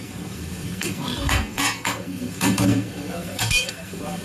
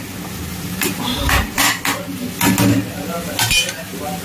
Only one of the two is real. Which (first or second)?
second